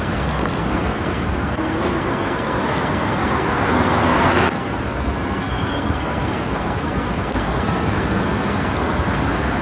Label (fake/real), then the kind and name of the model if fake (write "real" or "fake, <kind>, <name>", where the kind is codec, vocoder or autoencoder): fake, codec, SNAC